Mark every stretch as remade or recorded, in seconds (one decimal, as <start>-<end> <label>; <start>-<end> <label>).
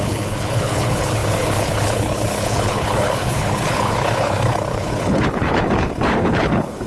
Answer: 0.0-6.9 remade